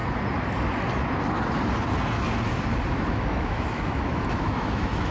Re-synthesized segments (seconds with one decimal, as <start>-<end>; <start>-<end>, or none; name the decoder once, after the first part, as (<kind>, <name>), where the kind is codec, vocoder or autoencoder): 2.9-5.1 (autoencoder, DAC-VAE)